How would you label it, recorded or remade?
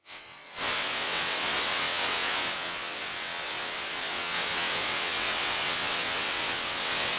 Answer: remade